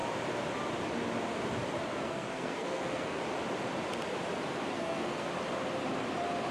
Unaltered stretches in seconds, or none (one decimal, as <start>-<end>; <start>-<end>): 0.0-1.9; 3.2-4.7; 5.3-6.5